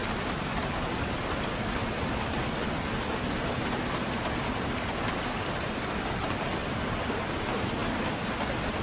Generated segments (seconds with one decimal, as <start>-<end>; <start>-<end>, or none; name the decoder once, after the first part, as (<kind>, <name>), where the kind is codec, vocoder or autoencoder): none